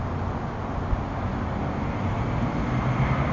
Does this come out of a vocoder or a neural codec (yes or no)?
no